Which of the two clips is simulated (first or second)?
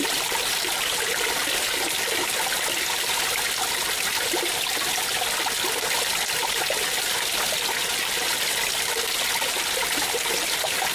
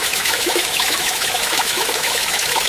second